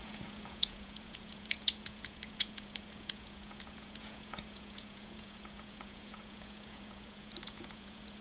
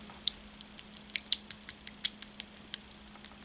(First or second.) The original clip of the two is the second